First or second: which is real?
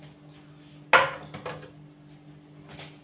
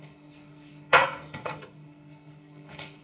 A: first